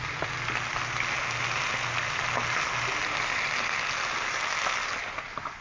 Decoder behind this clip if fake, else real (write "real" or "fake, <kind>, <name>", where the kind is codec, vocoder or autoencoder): real